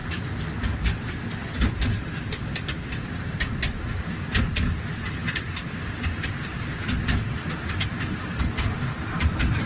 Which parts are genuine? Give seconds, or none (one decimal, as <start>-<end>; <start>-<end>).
0.0-9.7